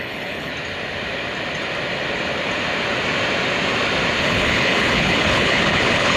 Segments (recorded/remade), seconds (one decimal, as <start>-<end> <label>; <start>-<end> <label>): 0.0-0.5 remade; 0.5-4.2 recorded; 4.2-6.2 remade